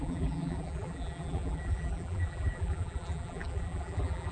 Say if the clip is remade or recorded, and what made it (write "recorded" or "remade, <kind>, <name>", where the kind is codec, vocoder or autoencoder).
remade, vocoder, BigVGAN v2